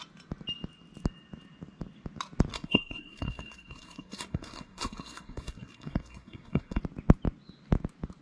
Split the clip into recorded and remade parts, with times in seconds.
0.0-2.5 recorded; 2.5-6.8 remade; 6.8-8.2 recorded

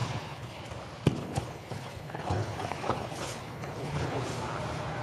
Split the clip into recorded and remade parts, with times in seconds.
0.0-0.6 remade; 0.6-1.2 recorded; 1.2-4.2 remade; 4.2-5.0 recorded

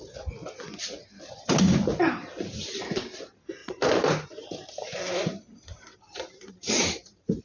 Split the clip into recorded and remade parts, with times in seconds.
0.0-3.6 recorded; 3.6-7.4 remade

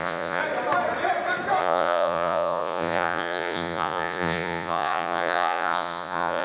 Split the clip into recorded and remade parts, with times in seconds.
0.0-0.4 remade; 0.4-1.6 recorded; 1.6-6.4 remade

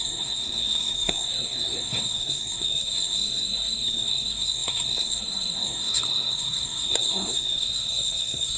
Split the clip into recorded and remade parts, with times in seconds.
0.0-8.6 remade